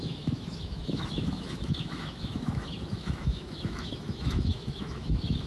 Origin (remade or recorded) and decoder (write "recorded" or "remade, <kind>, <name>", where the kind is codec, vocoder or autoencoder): remade, autoencoder, DAC-VAE